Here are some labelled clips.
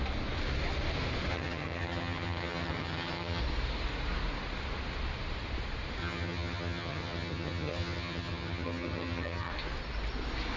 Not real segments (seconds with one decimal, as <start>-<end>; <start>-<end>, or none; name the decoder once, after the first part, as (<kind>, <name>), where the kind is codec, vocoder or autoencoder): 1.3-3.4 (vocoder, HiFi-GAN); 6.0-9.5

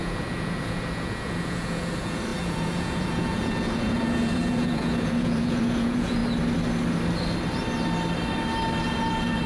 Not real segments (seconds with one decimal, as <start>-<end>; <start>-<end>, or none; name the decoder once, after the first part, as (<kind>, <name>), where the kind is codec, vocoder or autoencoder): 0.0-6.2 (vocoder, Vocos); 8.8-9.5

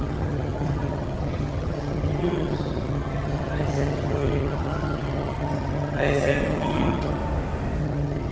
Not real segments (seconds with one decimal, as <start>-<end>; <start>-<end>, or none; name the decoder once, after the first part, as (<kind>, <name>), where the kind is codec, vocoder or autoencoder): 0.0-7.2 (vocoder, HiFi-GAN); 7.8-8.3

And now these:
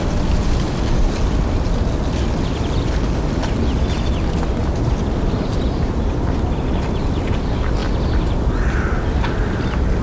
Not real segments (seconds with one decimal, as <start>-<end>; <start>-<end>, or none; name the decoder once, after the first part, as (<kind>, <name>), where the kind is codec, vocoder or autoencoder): none